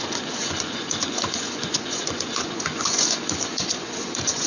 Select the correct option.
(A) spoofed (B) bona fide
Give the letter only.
A